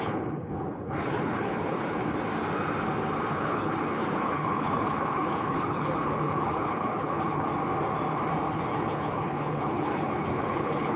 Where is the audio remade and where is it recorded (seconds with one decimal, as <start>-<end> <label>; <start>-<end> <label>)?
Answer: 0.0-2.0 remade; 2.0-3.3 recorded; 3.3-7.5 remade; 7.5-8.5 recorded; 8.5-11.0 remade